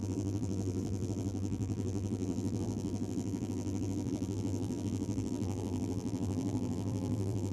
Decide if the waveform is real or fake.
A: fake